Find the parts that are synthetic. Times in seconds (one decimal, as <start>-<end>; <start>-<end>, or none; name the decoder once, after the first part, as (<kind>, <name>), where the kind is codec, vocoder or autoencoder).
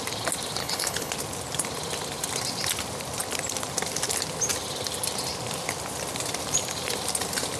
0.6-1.1 (codec, HILCodec)